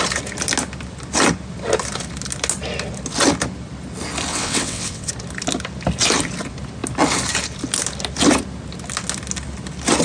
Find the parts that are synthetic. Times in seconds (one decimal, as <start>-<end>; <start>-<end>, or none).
4.3-5.1

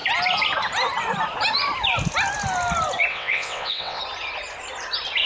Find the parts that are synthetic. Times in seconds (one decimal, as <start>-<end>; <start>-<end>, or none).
3.1-4.0

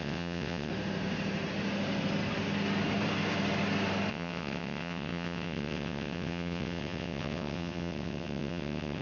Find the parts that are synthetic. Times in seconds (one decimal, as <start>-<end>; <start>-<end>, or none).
0.0-0.7; 4.1-9.0

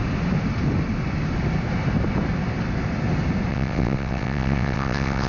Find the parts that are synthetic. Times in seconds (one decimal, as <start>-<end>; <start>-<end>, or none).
3.5-5.3

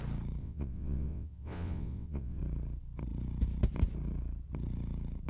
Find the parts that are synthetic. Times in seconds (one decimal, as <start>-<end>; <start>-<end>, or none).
0.4-2.4

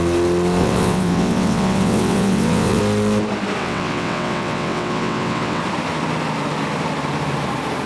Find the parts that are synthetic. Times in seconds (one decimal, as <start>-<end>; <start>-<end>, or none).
0.6-2.8; 3.6-5.6

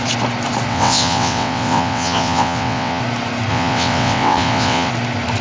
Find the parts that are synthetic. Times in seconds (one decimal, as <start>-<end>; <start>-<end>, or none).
0.7-3.0; 3.5-4.9

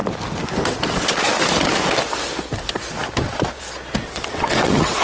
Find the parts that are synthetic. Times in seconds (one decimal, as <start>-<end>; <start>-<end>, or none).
4.0-5.0